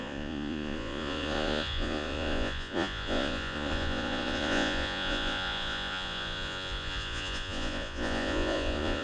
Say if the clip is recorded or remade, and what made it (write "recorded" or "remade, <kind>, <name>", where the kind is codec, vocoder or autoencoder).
remade, vocoder, Vocos